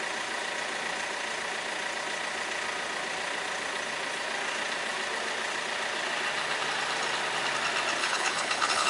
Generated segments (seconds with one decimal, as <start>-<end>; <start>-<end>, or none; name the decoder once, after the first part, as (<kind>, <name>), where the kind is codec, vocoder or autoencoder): 8.0-8.9 (codec, HILCodec)